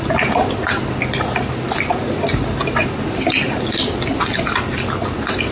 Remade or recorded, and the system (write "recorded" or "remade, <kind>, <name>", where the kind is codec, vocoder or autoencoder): recorded